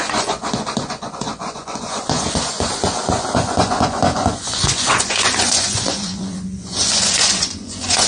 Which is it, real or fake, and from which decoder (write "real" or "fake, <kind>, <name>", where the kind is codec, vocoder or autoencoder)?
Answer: fake, vocoder, Vocos